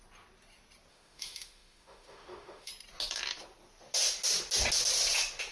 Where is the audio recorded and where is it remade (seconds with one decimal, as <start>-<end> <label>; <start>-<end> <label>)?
0.0-0.9 recorded; 0.9-2.7 remade; 2.7-5.5 recorded